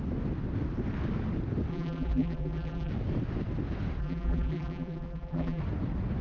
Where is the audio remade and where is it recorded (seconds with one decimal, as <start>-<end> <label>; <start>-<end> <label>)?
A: 0.0-1.7 recorded; 1.7-2.9 remade; 2.9-4.0 recorded; 4.0-5.6 remade; 5.6-6.2 recorded